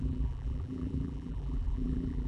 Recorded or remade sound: remade